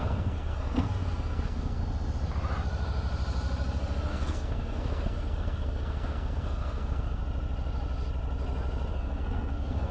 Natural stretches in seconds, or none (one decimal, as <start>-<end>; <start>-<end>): 1.8-4.1; 7.2-8.9